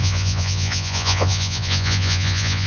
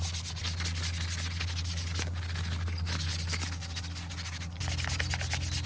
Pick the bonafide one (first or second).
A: second